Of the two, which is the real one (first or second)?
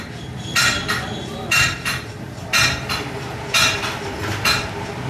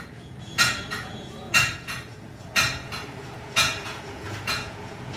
first